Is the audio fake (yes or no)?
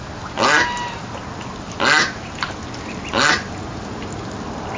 no